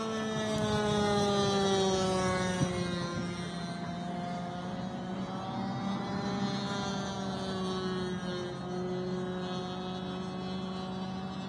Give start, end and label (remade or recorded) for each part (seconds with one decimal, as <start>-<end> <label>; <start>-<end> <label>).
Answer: 0.0-11.5 recorded